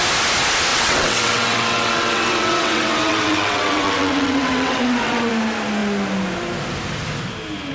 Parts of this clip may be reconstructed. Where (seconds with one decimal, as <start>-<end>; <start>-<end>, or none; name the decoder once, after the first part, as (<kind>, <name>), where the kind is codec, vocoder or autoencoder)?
0.7-5.3 (vocoder, WaveNeXt)

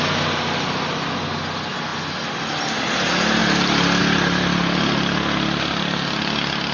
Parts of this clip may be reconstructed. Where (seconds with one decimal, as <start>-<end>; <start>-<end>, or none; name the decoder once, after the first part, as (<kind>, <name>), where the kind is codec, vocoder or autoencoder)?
none